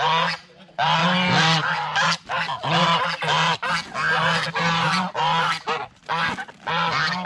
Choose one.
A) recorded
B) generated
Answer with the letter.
A